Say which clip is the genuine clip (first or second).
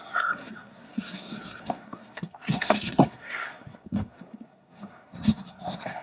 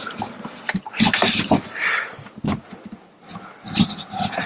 second